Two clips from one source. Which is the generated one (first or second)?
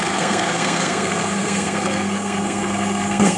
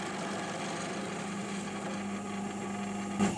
first